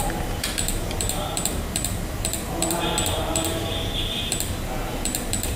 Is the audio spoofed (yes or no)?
yes